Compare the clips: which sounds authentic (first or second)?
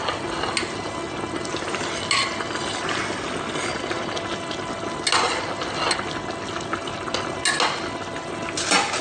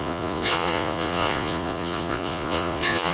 first